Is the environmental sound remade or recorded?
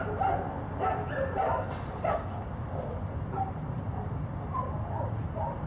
recorded